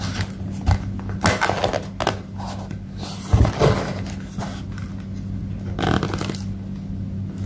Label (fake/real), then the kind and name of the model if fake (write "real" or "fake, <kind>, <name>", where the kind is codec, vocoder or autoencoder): real